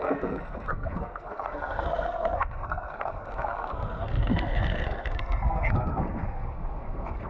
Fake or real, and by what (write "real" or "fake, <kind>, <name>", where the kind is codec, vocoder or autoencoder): fake, codec, SNAC